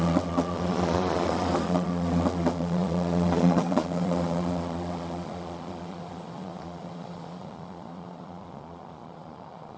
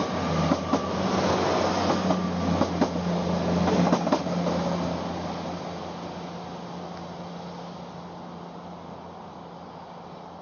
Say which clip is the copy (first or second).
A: first